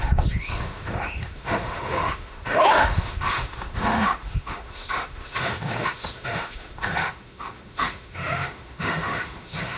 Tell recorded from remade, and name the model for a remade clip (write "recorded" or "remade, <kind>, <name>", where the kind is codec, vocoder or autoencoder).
remade, autoencoder, DAC-VAE